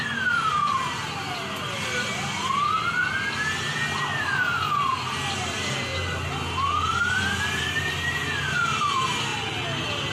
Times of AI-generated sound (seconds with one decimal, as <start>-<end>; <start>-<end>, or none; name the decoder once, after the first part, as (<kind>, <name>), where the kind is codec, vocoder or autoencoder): 0.0-0.6 (vocoder, BigVGAN v2); 5.4-5.9; 6.6-9.3